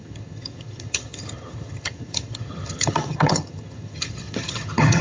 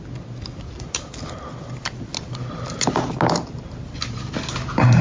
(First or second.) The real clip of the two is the second